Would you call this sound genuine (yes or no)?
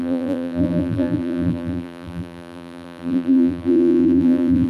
no